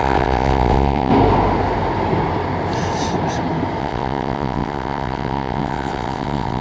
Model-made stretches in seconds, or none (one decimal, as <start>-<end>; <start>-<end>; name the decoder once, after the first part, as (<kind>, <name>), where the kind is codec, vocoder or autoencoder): 0.0-1.1 (vocoder, WaveNeXt); 3.8-6.6